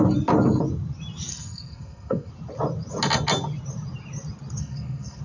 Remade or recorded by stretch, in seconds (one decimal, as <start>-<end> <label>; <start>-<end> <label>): 0.0-1.3 recorded; 1.3-2.3 remade; 2.3-4.6 recorded; 4.6-5.2 remade